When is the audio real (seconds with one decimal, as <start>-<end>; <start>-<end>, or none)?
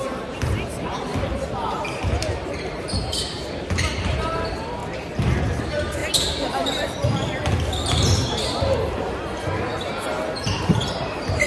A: 1.1-2.0; 4.8-5.6; 6.0-10.9